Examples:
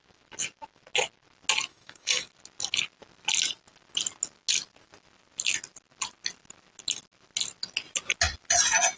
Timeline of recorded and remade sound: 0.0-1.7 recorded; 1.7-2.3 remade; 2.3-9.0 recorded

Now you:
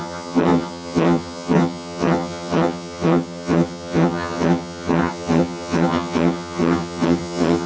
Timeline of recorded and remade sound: 0.0-7.7 remade

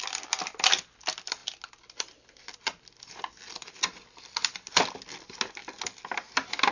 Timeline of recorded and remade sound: 0.0-6.7 recorded

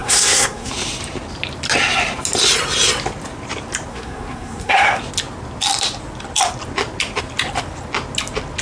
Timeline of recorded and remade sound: 0.0-0.7 remade; 0.7-3.9 recorded; 3.9-5.0 remade; 5.0-8.6 recorded

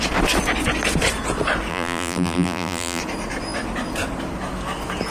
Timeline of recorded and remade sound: 0.0-1.7 recorded; 1.7-3.0 remade; 3.0-5.1 recorded

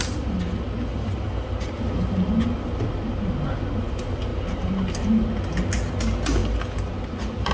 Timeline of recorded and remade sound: 0.0-0.9 recorded; 0.9-1.8 remade; 1.8-4.3 recorded; 4.3-4.9 remade; 4.9-7.5 recorded

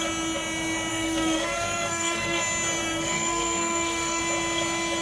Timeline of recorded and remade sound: 0.0-0.9 recorded; 0.9-2.4 remade; 2.4-2.8 recorded; 2.8-4.2 remade; 4.2-5.0 recorded